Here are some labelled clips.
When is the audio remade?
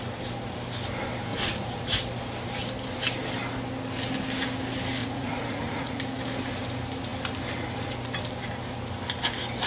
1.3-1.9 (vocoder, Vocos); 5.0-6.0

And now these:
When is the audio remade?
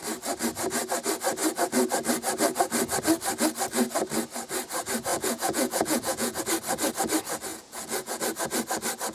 5.1-6.4 (vocoder, Vocos); 7.5-8.2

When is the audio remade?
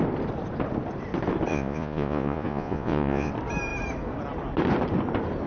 1.5-3.3 (vocoder, Vocos)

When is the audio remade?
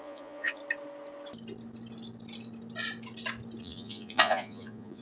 0.0-0.6 (vocoder, Vocos); 3.6-5.0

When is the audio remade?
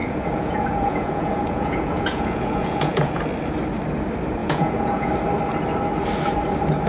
0.0-3.2 (vocoder, Vocos); 4.4-5.1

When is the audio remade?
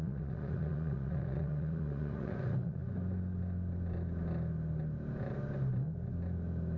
0.0-2.8 (vocoder, Vocos)